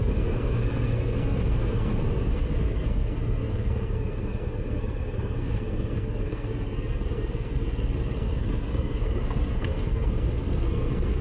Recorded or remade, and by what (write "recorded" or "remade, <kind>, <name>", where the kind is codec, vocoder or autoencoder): remade, codec, SNAC